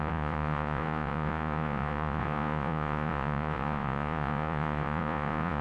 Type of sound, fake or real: fake